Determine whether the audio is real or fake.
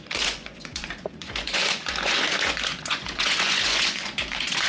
fake